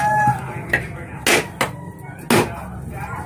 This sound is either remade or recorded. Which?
recorded